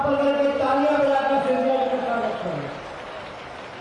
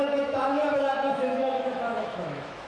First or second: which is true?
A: first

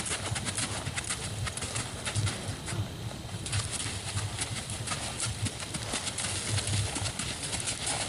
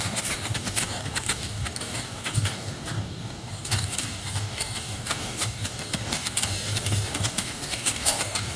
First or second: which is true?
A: first